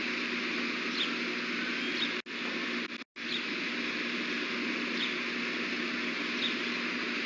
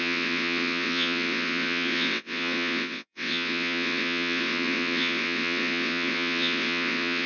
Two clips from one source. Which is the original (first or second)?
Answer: first